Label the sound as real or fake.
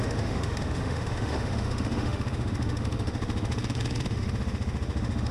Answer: fake